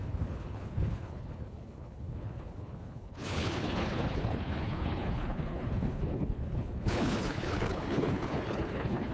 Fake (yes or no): yes